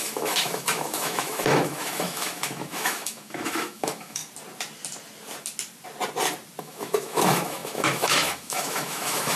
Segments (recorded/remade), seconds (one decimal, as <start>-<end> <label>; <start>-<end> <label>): 0.0-4.2 remade; 4.2-6.6 recorded; 6.6-9.4 remade